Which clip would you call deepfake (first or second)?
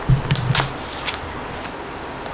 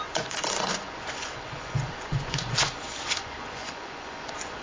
second